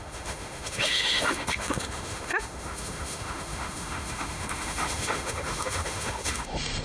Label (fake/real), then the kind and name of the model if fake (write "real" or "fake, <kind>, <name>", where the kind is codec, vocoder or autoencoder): fake, autoencoder, DAC-VAE